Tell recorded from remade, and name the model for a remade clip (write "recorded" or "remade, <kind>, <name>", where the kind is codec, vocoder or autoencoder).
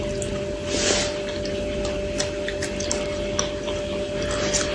recorded